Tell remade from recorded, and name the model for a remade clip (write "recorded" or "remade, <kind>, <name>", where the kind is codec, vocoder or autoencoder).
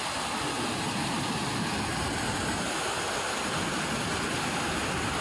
recorded